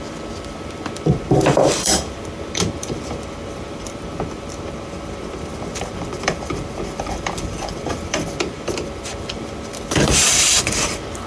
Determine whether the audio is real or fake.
fake